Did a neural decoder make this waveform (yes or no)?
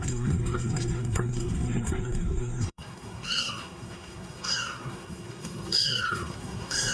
yes